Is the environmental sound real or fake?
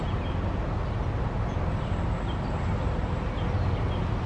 real